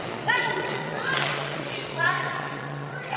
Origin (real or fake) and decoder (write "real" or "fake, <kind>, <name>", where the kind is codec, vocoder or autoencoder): fake, vocoder, Vocos